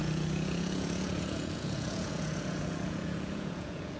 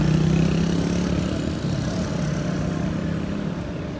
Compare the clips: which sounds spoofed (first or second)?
first